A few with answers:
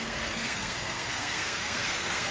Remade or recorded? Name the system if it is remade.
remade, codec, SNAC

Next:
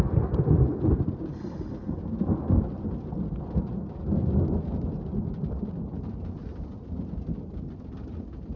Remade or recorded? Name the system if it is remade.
recorded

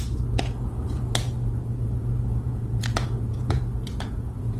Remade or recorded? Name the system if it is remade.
remade, vocoder, Vocos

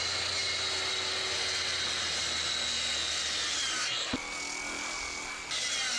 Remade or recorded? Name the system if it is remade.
recorded